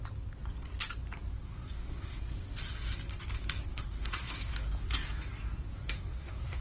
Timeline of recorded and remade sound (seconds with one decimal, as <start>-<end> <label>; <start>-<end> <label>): 0.0-1.3 recorded; 1.3-2.2 remade; 2.2-3.7 recorded; 3.7-4.5 remade; 4.5-5.7 recorded; 5.7-6.6 remade